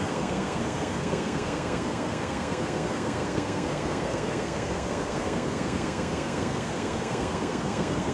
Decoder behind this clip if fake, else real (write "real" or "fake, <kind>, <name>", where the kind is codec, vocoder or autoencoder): fake, codec, SNAC